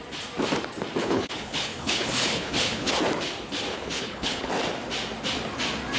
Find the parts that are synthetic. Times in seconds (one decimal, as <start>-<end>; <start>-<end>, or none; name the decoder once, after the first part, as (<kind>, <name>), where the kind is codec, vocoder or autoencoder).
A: 1.0-2.9 (codec, HILCodec); 3.7-4.5